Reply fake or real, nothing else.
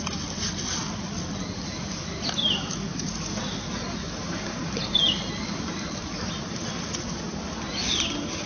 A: real